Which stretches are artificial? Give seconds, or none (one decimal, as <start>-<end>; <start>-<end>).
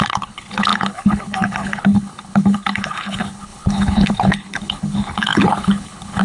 0.0-6.2